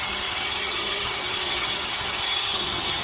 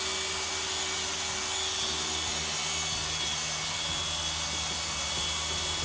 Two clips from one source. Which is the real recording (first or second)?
second